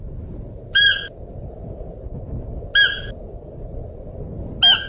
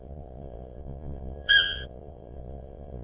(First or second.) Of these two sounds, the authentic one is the first